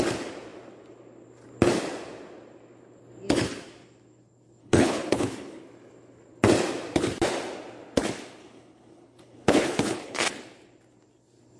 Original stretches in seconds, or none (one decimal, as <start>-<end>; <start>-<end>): 0.0-4.6; 5.6-8.4; 10.3-11.6